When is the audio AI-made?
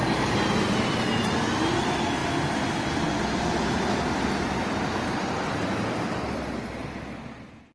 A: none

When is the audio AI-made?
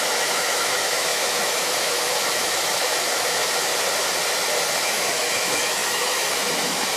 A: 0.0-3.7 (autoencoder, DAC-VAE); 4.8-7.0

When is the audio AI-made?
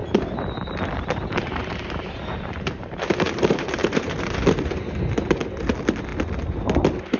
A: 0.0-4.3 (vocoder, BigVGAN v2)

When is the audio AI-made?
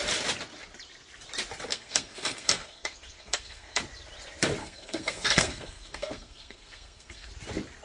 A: 1.7-3.8 (codec, SNAC); 4.6-7.3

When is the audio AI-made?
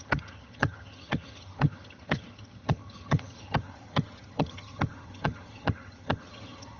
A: 0.0-6.8 (vocoder, HiFi-GAN)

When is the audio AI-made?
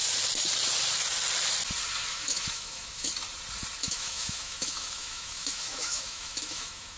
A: 2.1-3.1 (autoencoder, DAC-VAE); 3.8-7.0